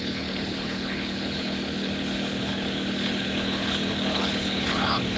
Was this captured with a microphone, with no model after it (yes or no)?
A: no